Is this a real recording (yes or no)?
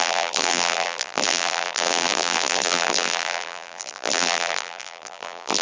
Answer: no